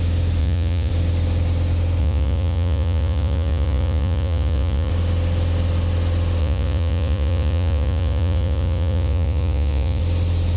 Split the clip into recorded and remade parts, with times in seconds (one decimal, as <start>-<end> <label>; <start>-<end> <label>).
0.0-0.4 recorded; 0.4-0.9 remade; 0.9-2.0 recorded; 2.0-4.9 remade; 4.9-6.4 recorded; 6.4-10.0 remade; 10.0-10.6 recorded